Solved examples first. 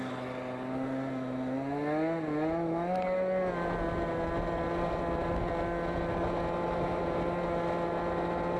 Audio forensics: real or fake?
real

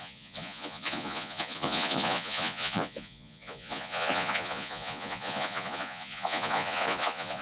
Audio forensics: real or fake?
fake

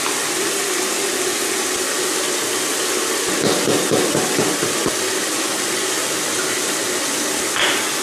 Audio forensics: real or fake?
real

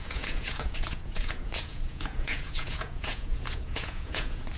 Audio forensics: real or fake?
fake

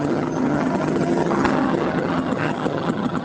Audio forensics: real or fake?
fake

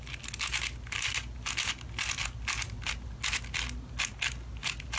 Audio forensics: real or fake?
real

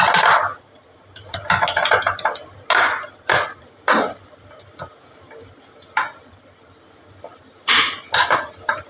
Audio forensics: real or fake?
real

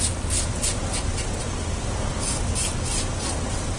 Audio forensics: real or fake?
real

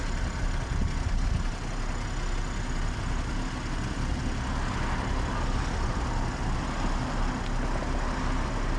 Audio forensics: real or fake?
real